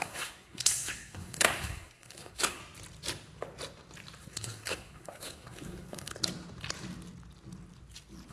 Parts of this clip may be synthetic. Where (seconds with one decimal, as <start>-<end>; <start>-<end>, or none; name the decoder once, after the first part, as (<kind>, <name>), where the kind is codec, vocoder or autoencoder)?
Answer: 0.0-2.6 (codec, SNAC); 4.2-6.1